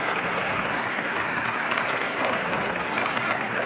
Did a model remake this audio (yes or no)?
yes